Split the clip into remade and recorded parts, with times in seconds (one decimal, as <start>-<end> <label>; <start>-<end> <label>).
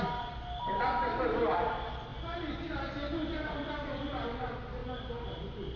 0.0-5.8 recorded